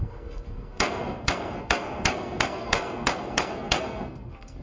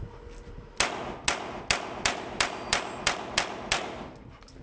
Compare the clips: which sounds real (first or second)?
second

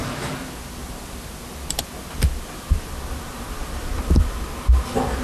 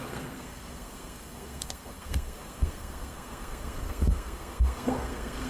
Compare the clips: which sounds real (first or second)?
first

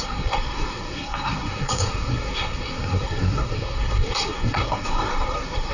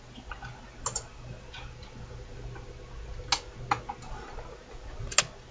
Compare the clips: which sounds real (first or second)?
second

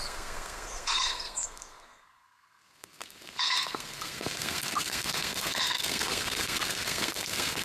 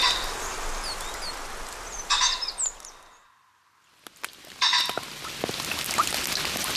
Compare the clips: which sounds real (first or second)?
second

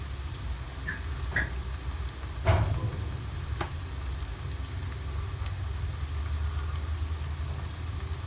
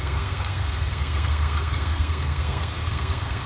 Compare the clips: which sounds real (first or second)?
first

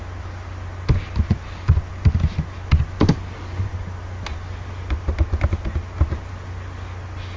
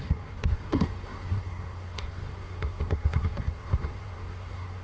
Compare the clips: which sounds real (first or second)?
first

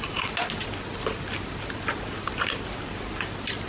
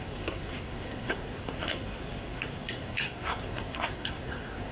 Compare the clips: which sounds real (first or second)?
first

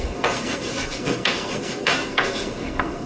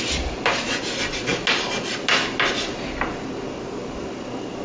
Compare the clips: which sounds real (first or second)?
second